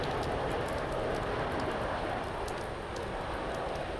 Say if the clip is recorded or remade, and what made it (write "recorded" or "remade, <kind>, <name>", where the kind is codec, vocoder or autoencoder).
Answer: recorded